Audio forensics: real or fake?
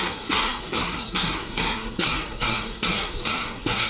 fake